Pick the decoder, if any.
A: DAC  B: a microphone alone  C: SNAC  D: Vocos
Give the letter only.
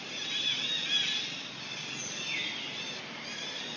B